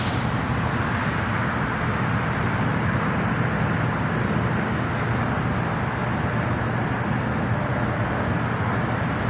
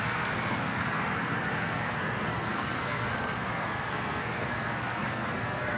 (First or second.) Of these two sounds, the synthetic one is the second